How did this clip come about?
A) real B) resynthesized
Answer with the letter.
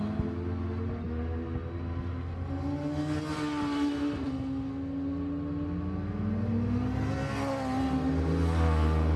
A